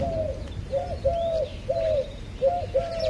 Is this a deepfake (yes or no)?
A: no